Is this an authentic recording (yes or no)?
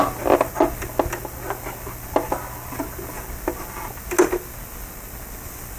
yes